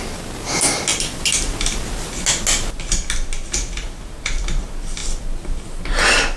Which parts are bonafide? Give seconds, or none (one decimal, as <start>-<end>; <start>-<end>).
0.0-6.4